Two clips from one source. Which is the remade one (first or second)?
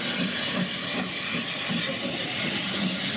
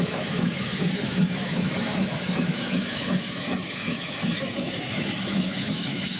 second